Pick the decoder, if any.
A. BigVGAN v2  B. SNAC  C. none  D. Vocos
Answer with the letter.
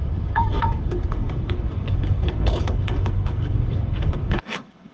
B